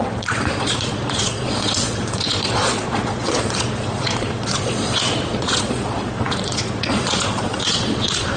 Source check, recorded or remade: remade